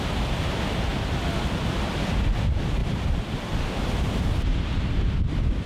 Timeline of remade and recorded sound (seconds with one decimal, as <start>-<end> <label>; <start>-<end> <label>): 0.0-2.8 recorded; 2.8-5.7 remade